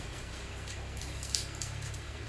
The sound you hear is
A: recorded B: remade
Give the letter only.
B